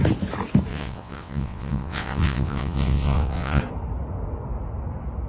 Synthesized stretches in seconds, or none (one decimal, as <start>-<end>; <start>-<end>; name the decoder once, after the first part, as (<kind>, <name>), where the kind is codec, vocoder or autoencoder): 0.7-3.6 (vocoder, WaveNeXt)